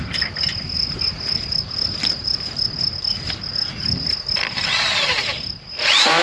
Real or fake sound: real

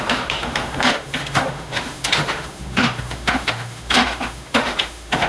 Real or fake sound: fake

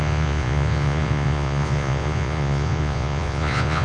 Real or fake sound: fake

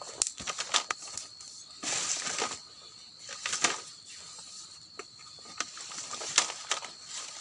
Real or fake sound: real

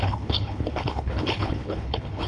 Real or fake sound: fake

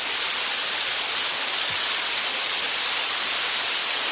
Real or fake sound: real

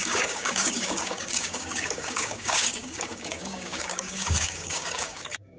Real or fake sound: fake